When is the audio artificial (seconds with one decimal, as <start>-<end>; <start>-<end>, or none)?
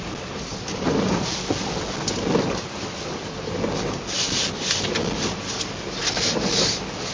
0.5-1.0